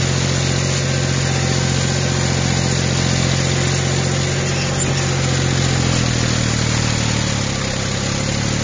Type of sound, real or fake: real